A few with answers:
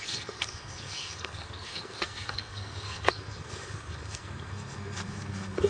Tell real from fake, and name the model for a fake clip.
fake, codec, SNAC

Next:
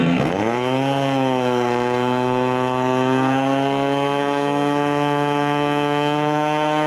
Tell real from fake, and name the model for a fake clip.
fake, codec, SNAC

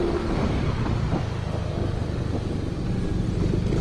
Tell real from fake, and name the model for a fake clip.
real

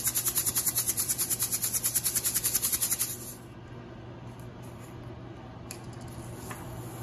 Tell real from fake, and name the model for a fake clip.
real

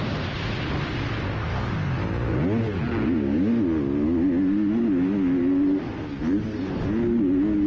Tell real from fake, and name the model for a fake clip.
real